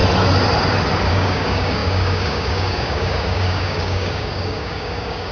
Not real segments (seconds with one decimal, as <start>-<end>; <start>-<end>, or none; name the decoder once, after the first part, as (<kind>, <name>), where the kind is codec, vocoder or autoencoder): 1.1-5.3 (codec, DAC)